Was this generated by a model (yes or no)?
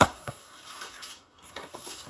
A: yes